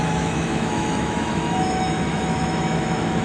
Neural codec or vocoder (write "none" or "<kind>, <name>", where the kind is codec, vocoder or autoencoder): autoencoder, DAC-VAE